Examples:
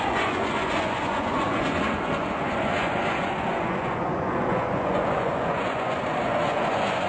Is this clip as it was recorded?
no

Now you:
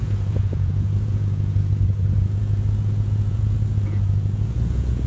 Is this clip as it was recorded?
no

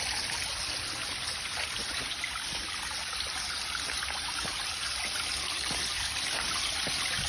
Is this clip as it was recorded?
yes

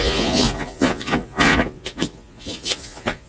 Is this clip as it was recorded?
no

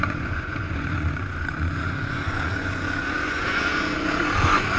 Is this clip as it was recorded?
no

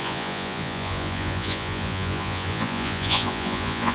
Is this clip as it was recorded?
no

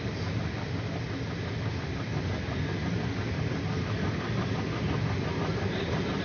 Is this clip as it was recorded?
yes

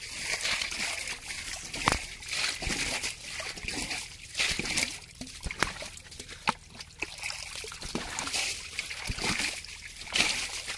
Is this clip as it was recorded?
yes